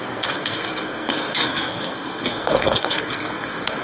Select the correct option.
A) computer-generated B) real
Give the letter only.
A